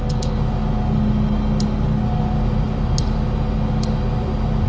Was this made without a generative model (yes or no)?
yes